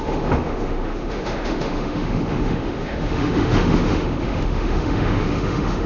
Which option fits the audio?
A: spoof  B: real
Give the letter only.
A